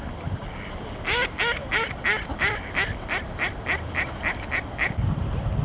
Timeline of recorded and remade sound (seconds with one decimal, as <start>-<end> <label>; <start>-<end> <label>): 0.0-5.6 recorded